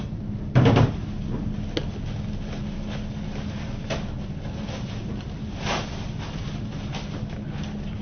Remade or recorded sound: recorded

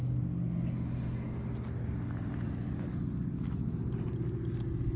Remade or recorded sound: recorded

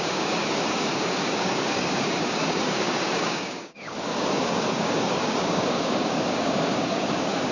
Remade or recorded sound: remade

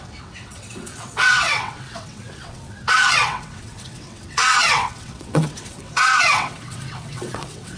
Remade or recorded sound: remade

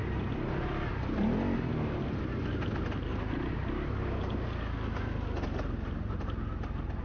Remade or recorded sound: recorded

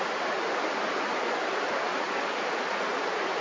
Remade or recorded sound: recorded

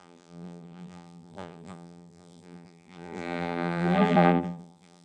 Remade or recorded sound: remade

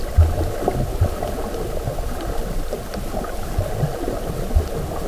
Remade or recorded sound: recorded